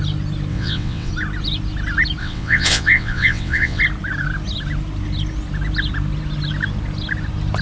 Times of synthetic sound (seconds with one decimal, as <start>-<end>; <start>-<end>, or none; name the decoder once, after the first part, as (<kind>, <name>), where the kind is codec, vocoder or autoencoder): 0.5-1.1 (vocoder, WaveNeXt); 2.2-3.8